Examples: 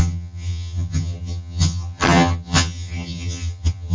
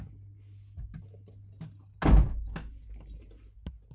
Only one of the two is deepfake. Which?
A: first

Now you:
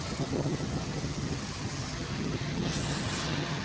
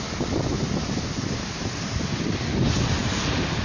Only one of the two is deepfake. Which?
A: first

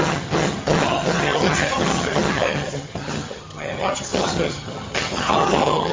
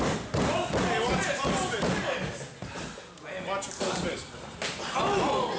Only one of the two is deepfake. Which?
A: first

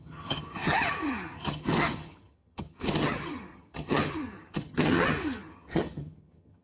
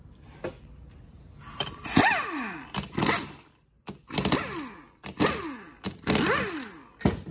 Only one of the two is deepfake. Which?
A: first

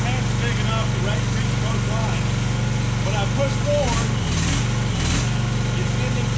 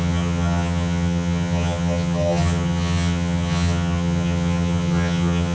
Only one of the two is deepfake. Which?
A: second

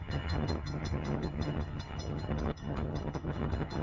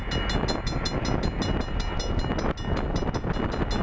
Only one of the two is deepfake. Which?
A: first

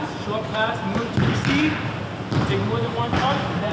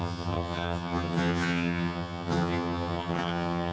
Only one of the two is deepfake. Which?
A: second